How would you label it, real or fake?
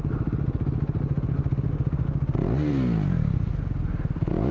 real